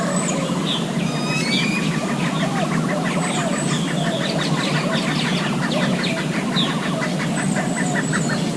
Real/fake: real